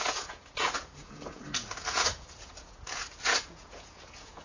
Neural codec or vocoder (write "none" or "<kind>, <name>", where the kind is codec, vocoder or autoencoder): vocoder, Vocos